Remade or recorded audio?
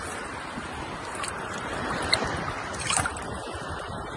remade